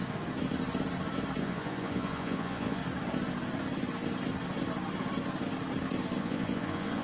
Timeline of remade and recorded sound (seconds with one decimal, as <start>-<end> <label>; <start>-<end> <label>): 0.0-1.4 recorded; 1.4-2.8 remade; 2.8-6.2 recorded; 6.2-7.0 remade